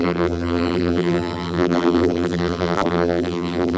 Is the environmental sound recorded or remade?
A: remade